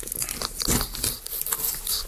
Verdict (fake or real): real